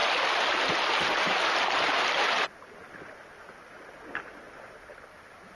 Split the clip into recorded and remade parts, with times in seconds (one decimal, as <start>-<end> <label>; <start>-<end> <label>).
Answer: 0.0-5.6 recorded